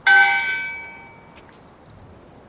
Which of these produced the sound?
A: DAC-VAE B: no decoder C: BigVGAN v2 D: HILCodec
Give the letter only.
B